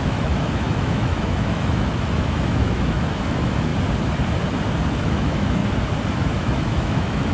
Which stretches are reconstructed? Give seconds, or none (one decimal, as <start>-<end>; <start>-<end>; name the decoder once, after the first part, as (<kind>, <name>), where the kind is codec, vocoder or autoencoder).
0.0-3.7 (autoencoder, DAC-VAE); 4.9-5.6; 6.1-7.3